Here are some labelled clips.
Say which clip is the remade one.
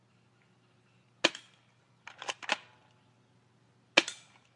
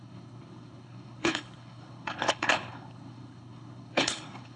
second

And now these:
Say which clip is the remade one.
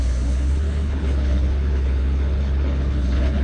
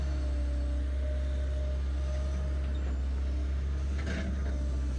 first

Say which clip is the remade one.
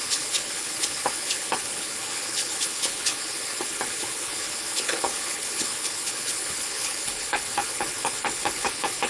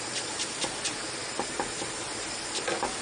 first